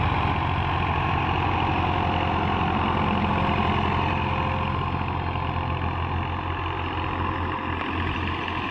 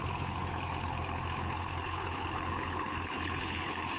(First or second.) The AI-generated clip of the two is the second